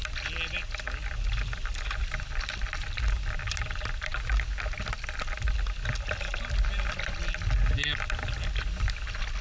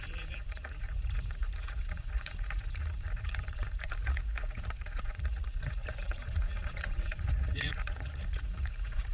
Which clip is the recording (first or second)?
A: first